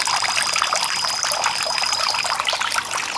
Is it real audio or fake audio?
real